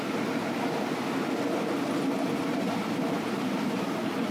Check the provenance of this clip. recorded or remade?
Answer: recorded